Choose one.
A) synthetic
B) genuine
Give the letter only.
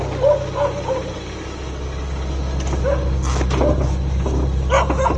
B